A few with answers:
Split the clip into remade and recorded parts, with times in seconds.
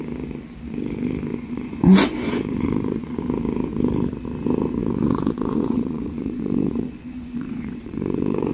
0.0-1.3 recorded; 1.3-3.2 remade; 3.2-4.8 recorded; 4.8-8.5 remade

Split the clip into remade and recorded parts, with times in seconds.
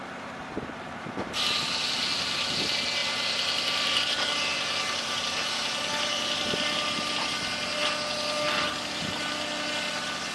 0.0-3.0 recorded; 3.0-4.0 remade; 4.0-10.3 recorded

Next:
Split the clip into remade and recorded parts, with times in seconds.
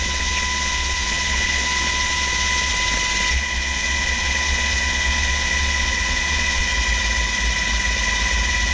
0.0-2.7 remade; 2.7-3.3 recorded; 3.3-6.7 remade; 6.7-8.7 recorded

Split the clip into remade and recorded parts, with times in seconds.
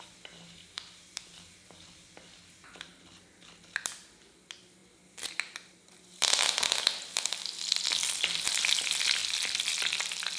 0.0-10.4 recorded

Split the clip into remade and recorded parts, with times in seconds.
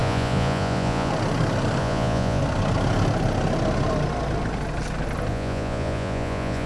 0.0-1.1 remade; 1.1-1.8 recorded; 1.8-2.4 remade; 2.4-5.3 recorded; 5.3-6.7 remade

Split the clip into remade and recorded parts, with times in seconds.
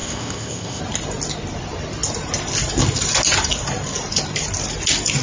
0.0-0.8 remade; 0.8-5.2 recorded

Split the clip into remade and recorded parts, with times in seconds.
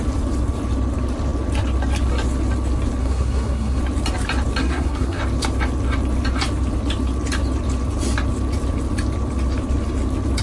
0.0-3.0 recorded; 3.0-3.8 remade; 3.8-4.6 recorded; 4.6-5.2 remade; 5.2-10.4 recorded